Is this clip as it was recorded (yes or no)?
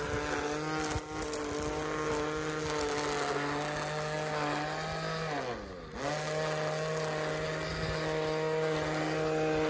yes